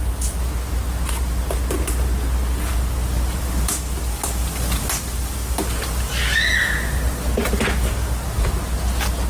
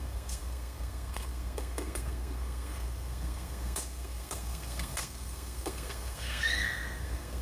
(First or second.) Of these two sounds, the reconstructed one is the second